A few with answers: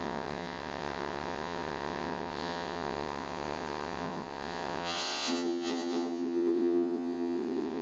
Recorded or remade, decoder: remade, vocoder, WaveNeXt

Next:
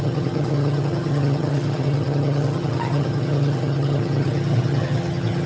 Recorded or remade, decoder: remade, vocoder, HiFi-GAN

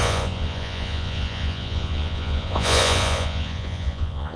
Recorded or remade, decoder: remade, vocoder, Vocos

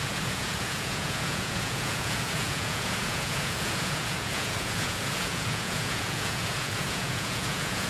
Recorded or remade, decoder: remade, vocoder, Vocos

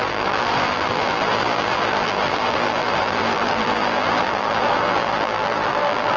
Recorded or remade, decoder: remade, vocoder, BigVGAN v2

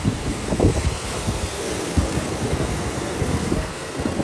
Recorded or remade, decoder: remade, codec, SNAC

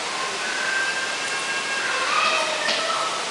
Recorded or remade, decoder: recorded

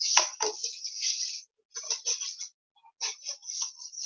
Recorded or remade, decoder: recorded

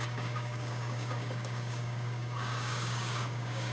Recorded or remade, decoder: remade, codec, DAC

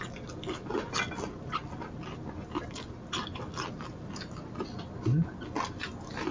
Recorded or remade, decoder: recorded